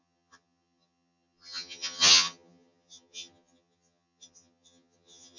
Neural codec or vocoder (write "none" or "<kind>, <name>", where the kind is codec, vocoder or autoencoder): vocoder, HiFi-GAN